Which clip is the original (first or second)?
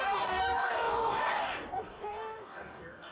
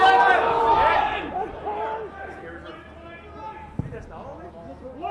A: second